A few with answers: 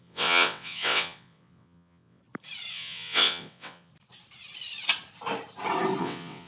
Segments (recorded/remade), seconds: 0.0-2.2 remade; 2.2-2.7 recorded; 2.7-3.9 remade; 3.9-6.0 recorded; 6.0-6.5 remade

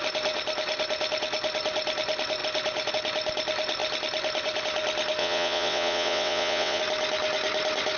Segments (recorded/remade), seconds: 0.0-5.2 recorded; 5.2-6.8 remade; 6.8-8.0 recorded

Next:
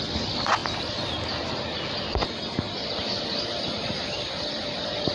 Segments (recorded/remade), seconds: 0.0-5.1 recorded

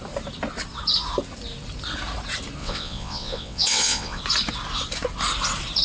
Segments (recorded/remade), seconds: 0.0-2.6 recorded; 2.6-4.2 remade; 4.2-5.8 recorded

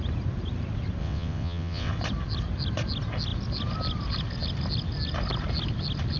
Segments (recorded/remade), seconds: 0.0-1.0 recorded; 1.0-1.9 remade; 1.9-6.2 recorded